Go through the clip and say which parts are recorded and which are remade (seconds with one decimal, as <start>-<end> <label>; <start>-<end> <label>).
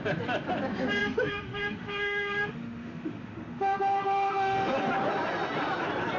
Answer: 0.0-1.0 recorded; 1.0-4.7 remade; 4.7-6.2 recorded